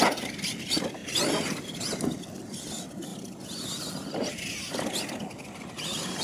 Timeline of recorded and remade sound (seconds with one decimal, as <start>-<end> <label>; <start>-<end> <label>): 0.0-1.0 recorded; 1.0-1.6 remade; 1.6-6.2 recorded